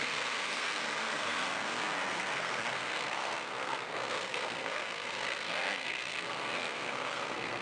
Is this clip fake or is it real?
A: fake